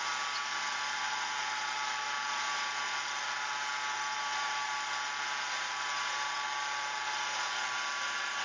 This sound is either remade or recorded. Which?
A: recorded